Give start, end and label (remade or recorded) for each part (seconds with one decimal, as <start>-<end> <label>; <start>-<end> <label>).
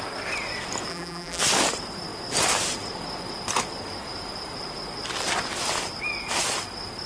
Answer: 0.0-0.9 recorded; 0.9-1.4 remade; 1.4-7.1 recorded